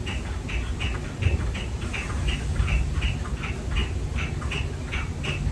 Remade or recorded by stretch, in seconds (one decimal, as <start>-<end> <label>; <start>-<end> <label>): 0.0-5.5 recorded